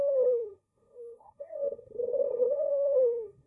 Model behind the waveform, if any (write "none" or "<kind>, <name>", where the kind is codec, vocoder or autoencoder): codec, SNAC